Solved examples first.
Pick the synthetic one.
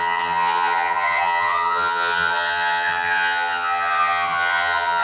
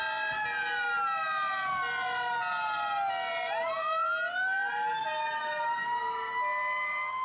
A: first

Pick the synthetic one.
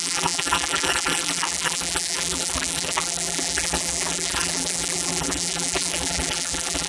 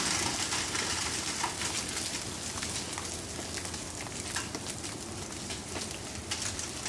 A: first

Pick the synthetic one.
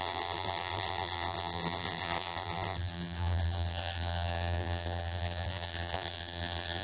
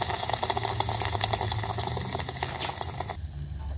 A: first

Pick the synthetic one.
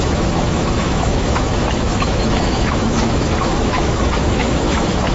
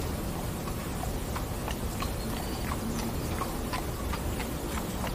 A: first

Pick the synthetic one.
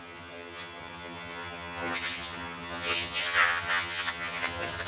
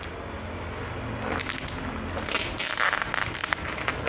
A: first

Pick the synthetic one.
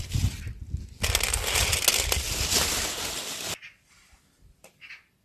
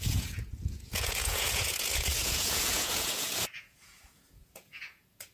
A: second